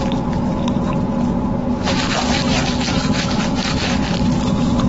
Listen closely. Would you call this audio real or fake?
real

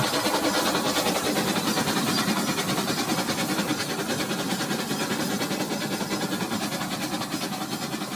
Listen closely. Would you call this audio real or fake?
real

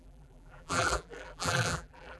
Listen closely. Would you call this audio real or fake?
fake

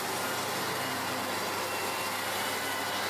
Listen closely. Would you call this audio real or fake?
real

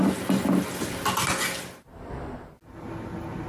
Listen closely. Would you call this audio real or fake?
real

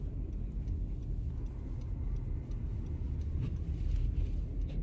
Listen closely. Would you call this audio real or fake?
real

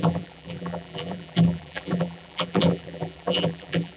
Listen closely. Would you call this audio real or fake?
fake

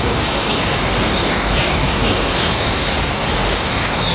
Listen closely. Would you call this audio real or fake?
fake